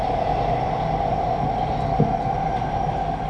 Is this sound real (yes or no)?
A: yes